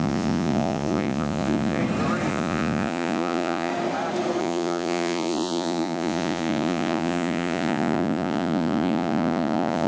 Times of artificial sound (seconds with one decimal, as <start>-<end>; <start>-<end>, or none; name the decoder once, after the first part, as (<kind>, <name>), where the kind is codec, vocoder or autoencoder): 0.0-1.8 (vocoder, Vocos); 2.3-3.7; 4.4-9.9

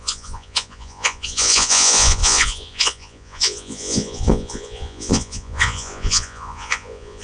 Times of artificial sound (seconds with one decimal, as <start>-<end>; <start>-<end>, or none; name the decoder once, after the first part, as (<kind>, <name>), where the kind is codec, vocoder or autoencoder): 0.0-7.2 (vocoder, Vocos)

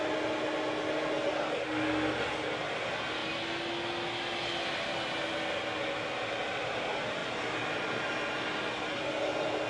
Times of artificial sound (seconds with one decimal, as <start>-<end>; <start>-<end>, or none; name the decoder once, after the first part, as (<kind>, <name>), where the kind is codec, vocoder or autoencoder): none

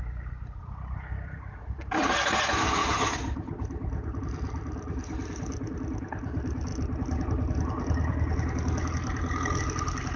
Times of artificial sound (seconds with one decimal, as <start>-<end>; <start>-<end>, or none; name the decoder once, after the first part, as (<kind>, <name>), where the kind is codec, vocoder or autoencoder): none

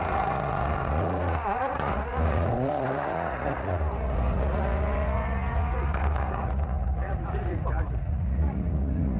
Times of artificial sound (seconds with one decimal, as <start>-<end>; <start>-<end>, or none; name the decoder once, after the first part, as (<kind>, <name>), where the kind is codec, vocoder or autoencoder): 0.0-9.2 (vocoder, Vocos)

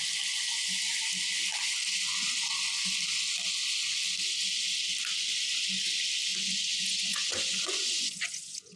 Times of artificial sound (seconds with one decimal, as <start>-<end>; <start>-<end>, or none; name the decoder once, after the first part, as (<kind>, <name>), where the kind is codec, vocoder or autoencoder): 6.3-8.8 (vocoder, Vocos)

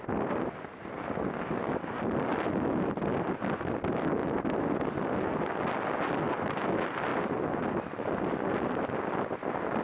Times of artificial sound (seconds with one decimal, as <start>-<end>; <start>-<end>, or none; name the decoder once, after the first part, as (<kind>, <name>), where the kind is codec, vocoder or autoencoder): none

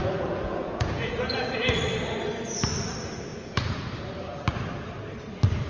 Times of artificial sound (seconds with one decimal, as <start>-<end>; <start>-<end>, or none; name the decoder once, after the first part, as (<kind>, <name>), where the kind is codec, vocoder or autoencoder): 0.0-1.8 (vocoder, Vocos); 3.3-3.9